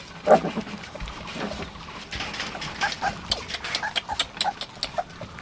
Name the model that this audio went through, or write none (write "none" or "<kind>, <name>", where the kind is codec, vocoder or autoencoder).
none